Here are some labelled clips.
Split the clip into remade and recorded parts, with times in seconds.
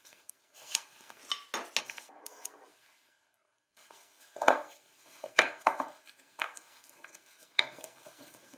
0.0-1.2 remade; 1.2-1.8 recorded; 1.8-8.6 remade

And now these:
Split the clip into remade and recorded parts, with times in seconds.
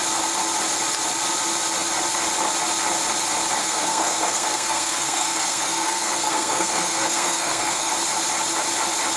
0.0-3.6 recorded; 3.6-7.9 remade; 7.9-9.2 recorded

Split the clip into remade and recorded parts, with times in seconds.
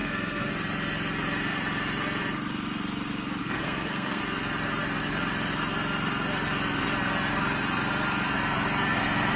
0.0-0.5 remade; 0.5-3.4 recorded; 3.4-4.2 remade; 4.2-9.4 recorded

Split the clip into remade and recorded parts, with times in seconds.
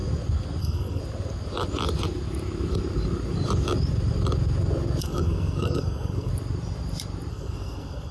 0.0-0.6 recorded; 0.6-1.0 remade; 1.0-5.0 recorded; 5.0-6.3 remade; 6.3-7.3 recorded; 7.3-8.1 remade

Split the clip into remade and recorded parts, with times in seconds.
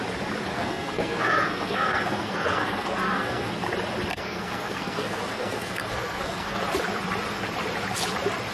0.0-0.5 recorded; 0.5-3.5 remade; 3.5-4.1 recorded; 4.1-6.6 remade; 6.6-8.5 recorded